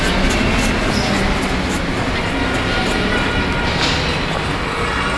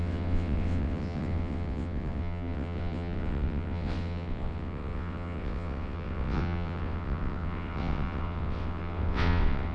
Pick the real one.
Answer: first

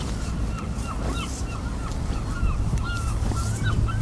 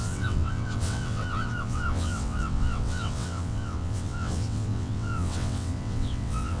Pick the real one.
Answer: first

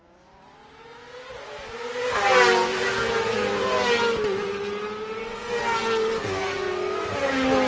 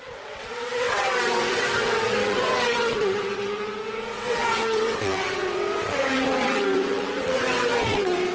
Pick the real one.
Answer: first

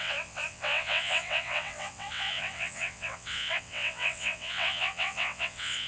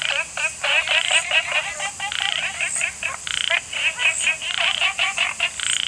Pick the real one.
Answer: second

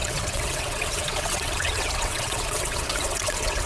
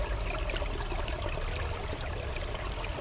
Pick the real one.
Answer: second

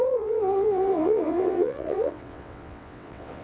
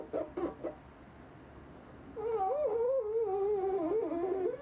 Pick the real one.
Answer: second